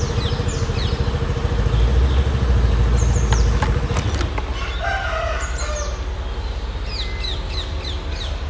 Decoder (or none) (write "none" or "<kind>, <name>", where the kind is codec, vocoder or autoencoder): none